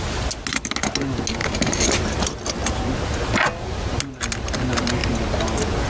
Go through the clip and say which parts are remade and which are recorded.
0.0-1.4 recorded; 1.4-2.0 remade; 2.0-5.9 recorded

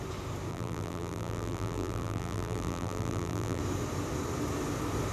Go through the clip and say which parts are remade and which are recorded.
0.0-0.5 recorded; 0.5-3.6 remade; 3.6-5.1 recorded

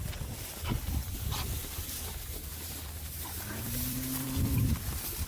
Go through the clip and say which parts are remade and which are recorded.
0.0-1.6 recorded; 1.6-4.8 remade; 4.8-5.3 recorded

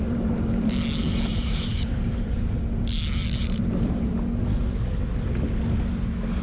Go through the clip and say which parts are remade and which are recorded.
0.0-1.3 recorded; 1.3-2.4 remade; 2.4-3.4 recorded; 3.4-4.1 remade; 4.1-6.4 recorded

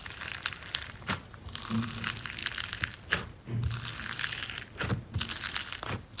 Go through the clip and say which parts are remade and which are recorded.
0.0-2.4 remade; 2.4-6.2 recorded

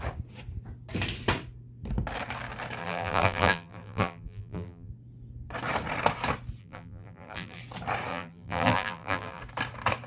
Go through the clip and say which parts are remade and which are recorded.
0.0-2.8 recorded; 2.8-4.9 remade; 4.9-6.6 recorded; 6.6-7.6 remade; 7.6-8.1 recorded; 8.1-9.4 remade; 9.4-10.1 recorded

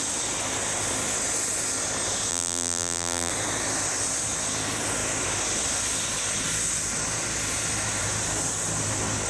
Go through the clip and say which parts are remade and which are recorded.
0.0-2.3 recorded; 2.3-3.3 remade; 3.3-9.3 recorded

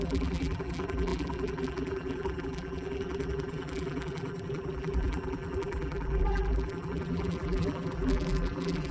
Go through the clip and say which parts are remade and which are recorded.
0.0-8.9 remade